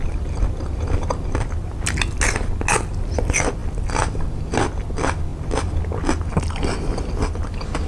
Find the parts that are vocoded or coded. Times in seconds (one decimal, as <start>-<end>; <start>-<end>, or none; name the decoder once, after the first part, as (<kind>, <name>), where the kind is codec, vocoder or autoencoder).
none